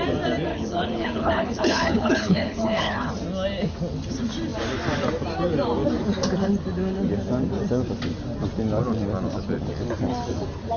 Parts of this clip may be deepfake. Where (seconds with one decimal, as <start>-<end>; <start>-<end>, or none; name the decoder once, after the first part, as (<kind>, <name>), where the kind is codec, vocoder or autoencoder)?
0.5-3.1 (codec, HILCodec)